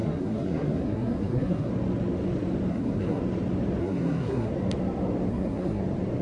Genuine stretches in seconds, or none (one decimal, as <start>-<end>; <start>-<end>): 1.7-2.7; 3.2-3.8; 4.5-5.3; 5.8-6.2